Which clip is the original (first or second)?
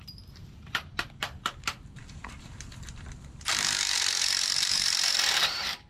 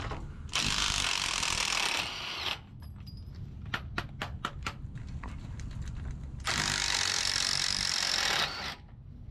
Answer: second